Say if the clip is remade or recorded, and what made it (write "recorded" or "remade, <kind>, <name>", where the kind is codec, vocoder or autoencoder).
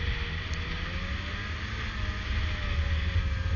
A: recorded